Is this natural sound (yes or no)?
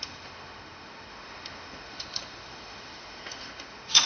no